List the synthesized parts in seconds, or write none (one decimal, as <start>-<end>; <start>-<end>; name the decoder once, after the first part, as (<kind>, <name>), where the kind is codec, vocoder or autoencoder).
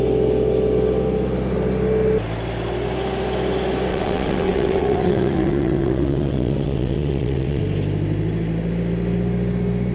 3.9-7.6 (vocoder, WaveNeXt)